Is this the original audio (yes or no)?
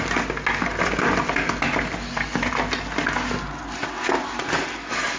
yes